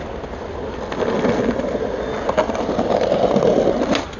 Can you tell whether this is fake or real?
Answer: real